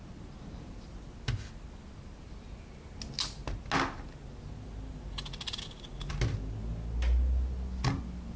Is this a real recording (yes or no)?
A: yes